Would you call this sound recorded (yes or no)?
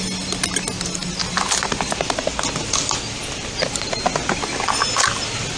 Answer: yes